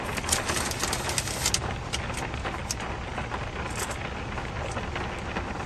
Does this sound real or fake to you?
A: real